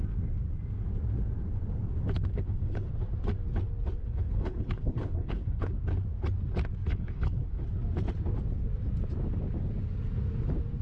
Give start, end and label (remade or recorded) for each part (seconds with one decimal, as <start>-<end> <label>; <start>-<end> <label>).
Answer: 0.0-2.3 recorded; 2.3-2.9 remade; 2.9-4.0 recorded; 4.0-5.7 remade; 5.7-6.9 recorded; 6.9-7.6 remade; 7.6-10.8 recorded